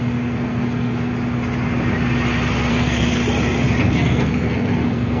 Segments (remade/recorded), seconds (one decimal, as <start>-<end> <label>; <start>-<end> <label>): 0.0-1.1 remade; 1.1-2.7 recorded; 2.7-3.2 remade; 3.2-3.8 recorded; 3.8-5.2 remade